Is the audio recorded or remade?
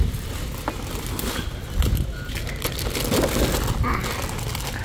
recorded